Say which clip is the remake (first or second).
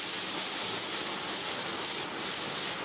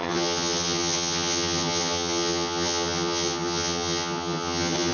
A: second